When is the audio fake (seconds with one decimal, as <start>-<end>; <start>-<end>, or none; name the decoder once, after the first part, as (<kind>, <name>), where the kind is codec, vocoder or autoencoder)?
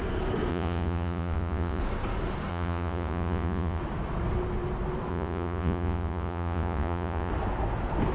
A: 0.5-1.8 (vocoder, Vocos); 2.5-3.8; 5.1-7.3